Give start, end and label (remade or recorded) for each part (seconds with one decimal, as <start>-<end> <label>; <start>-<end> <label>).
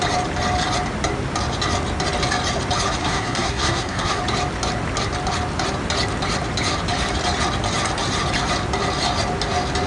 0.0-3.0 recorded; 3.0-4.2 remade; 4.2-9.9 recorded